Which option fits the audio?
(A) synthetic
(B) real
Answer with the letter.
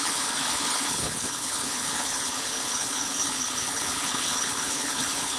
A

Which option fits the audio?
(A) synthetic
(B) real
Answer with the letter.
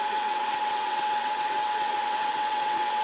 A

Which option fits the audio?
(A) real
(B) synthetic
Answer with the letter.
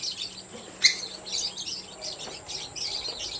A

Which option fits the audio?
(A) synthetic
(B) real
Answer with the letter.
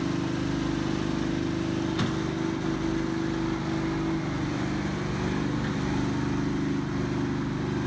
B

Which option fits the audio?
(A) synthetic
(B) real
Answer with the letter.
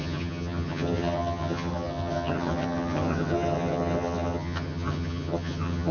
A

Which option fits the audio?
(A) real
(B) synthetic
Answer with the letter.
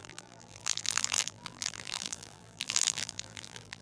B